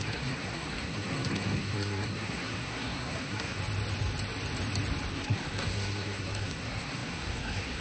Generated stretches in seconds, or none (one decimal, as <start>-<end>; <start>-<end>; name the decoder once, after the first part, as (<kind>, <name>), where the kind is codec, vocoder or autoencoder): 0.0-3.6 (codec, SNAC); 5.1-7.8